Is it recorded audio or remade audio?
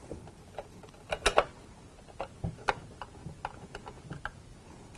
recorded